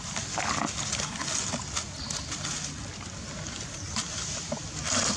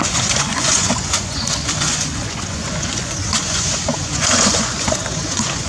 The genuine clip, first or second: first